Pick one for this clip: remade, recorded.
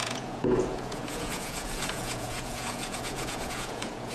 remade